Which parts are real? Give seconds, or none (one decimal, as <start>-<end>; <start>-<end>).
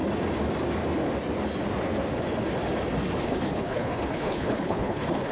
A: 0.0-3.2